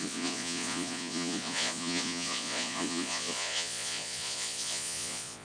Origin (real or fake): fake